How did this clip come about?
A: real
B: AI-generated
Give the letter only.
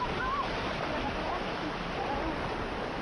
A